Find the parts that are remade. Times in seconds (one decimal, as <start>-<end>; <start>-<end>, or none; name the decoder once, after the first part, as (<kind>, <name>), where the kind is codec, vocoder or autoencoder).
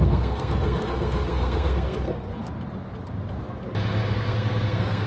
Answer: 0.0-2.3 (codec, SNAC); 4.0-5.1